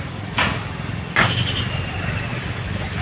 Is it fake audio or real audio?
real